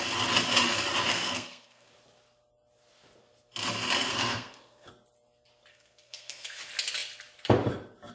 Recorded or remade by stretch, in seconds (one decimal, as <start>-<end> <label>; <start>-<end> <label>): 0.0-1.1 recorded; 1.1-1.9 remade; 1.9-4.1 recorded; 4.1-4.9 remade; 4.9-5.7 recorded; 5.7-6.6 remade; 6.6-8.1 recorded